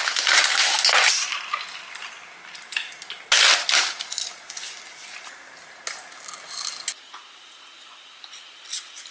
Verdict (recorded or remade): recorded